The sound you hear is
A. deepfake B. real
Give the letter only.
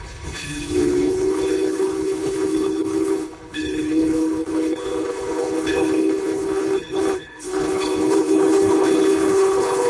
A